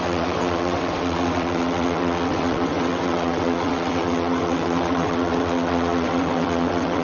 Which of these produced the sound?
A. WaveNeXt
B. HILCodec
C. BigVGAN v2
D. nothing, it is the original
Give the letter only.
A